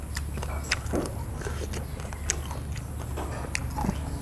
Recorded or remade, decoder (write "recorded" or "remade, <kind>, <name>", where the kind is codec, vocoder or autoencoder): recorded